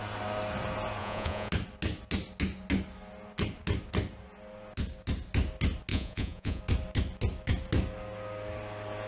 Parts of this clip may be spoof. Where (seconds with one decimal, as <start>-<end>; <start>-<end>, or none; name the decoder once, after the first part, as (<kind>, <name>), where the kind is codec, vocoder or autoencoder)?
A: 1.0-1.5 (vocoder, Vocos); 5.9-6.6